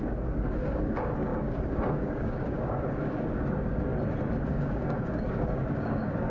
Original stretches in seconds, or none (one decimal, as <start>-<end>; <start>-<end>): 3.9-4.5